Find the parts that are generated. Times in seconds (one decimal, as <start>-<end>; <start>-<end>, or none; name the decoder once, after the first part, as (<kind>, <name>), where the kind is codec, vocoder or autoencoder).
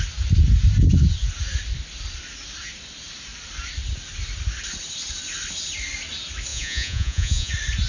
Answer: 6.5-7.5 (vocoder, Vocos)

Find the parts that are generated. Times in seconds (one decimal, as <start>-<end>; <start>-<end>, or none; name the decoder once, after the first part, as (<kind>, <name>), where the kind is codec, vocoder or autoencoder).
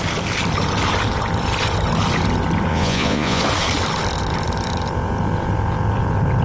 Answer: 2.7-3.4 (vocoder, Vocos)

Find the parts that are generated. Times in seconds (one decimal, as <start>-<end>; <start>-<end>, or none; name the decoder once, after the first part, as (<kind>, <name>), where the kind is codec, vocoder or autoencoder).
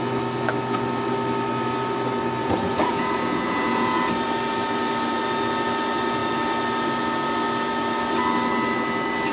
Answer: 2.4-4.1 (vocoder, Vocos)